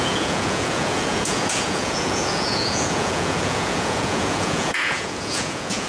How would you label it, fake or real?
fake